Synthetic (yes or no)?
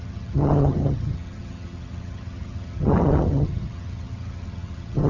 yes